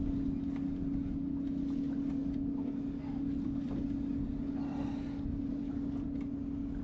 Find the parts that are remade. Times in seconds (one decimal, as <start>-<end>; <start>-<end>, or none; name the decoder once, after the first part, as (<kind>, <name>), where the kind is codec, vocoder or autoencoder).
none